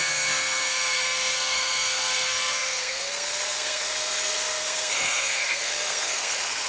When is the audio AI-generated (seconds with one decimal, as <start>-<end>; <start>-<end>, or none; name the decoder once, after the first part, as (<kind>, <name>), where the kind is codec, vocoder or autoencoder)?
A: 0.0-6.7 (codec, SNAC)